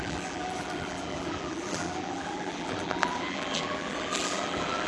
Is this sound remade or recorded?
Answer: remade